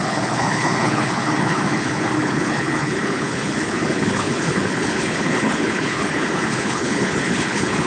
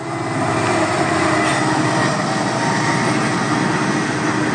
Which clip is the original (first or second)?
second